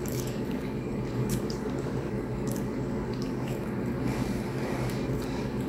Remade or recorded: remade